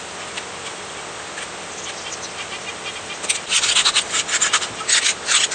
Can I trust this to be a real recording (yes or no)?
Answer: yes